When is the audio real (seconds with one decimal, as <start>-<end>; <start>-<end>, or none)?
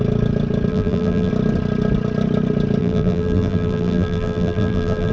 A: 0.0-0.7; 1.3-2.8